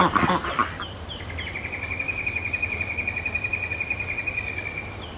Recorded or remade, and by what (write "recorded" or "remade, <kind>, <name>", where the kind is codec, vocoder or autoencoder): recorded